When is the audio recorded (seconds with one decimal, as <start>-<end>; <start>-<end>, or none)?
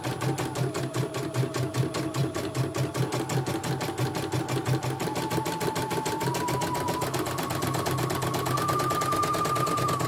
0.0-10.1